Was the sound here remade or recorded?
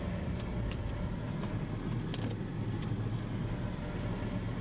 recorded